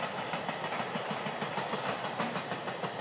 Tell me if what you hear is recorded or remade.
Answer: recorded